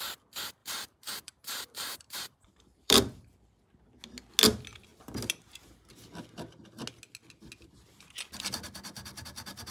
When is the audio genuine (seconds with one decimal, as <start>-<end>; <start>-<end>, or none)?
0.0-0.6; 3.5-9.7